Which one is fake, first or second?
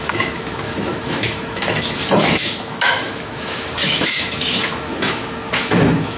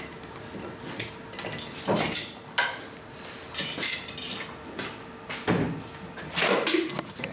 first